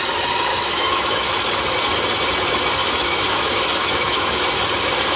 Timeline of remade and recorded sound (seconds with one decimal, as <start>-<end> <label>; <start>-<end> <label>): 0.0-0.5 recorded; 0.5-1.3 remade; 1.3-2.8 recorded; 2.8-4.4 remade; 4.4-5.2 recorded